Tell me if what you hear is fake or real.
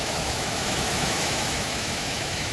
fake